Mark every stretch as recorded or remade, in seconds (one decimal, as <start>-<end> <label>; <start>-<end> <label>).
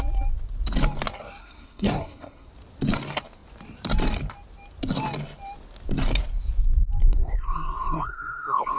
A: 0.0-1.4 recorded; 1.4-2.5 remade; 2.5-7.0 recorded; 7.0-8.8 remade